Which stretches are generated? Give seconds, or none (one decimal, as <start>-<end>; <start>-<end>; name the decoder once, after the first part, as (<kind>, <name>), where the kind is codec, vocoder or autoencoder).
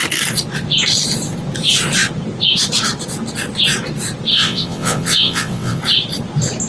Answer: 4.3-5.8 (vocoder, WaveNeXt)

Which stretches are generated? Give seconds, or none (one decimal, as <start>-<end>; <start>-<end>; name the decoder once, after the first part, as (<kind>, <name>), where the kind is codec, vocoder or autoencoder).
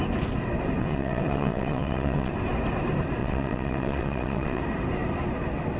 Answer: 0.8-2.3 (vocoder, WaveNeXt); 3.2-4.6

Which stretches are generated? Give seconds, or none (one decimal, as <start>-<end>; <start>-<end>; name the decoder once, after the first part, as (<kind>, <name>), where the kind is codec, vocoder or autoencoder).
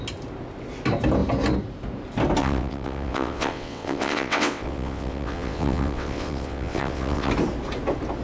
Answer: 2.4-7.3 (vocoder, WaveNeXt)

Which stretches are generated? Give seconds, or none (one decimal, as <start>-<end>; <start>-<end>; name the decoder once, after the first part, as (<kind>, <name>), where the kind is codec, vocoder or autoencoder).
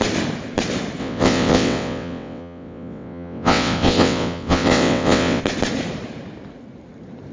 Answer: 1.0-5.4 (vocoder, WaveNeXt)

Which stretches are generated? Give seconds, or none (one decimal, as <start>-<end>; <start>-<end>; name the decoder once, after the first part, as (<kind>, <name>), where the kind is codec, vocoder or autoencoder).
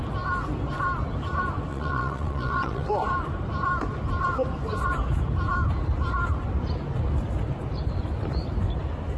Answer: 1.7-2.9 (vocoder, WaveNeXt)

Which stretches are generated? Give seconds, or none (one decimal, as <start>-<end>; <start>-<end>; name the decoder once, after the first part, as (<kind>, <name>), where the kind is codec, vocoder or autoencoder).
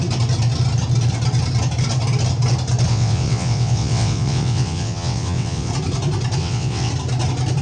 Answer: 2.9-5.7 (vocoder, WaveNeXt); 6.4-6.9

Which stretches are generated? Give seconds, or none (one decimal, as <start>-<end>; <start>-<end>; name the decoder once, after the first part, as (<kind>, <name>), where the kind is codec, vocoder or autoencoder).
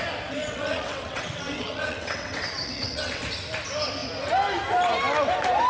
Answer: 0.4-3.2 (vocoder, WaveNeXt)